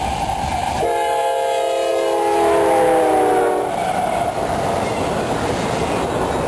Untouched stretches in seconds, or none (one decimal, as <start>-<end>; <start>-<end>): 0.0-0.6; 1.2-1.9; 3.3-6.5